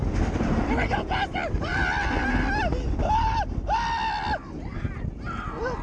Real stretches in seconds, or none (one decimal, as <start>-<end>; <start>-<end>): 0.0-5.8